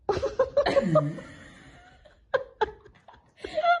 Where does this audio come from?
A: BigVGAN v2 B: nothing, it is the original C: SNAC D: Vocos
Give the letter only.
B